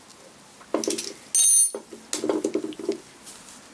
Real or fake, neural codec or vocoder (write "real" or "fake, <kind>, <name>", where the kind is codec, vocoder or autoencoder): real